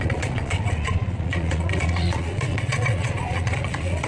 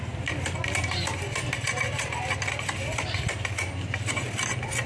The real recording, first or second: second